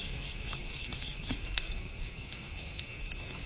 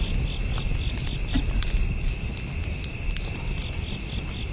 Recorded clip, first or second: second